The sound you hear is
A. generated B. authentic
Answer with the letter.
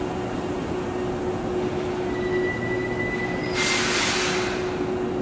B